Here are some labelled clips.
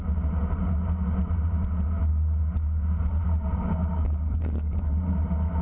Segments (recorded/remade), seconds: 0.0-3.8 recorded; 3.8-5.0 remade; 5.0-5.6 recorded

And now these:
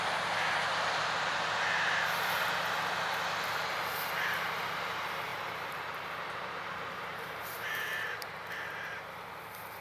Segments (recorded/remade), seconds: 0.0-5.3 recorded; 5.3-8.5 remade; 8.5-9.8 recorded

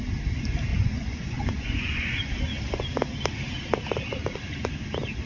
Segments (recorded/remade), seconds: 0.0-0.7 recorded; 0.7-2.2 remade; 2.2-5.3 recorded

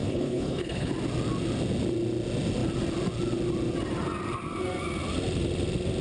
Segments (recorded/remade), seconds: 0.0-0.9 remade; 0.9-6.0 recorded

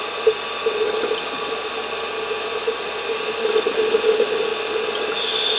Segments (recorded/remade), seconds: 0.0-5.6 recorded

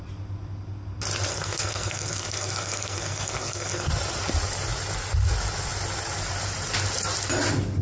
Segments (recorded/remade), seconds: 0.0-1.3 recorded; 1.3-3.9 remade; 3.9-7.8 recorded

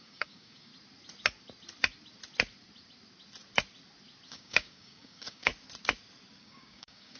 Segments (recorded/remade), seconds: 0.0-0.7 remade; 0.7-4.3 recorded; 4.3-5.5 remade; 5.5-6.4 recorded; 6.4-7.2 remade